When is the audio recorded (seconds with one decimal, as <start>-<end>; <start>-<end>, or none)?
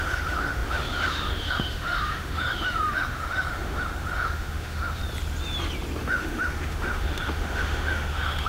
5.0-6.0